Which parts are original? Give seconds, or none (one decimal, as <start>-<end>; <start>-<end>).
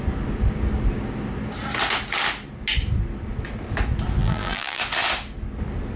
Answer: 0.0-4.2; 4.8-6.0